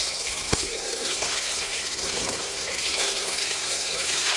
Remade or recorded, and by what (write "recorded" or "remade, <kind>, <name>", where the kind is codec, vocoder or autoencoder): remade, codec, SNAC